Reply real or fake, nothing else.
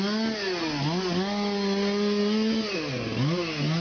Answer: real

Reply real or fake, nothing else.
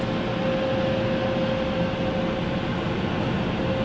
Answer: real